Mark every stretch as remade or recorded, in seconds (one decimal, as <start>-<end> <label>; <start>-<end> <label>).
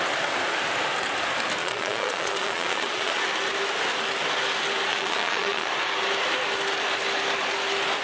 0.0-1.6 recorded; 1.6-3.2 remade; 3.2-4.9 recorded; 4.9-5.7 remade; 5.7-8.0 recorded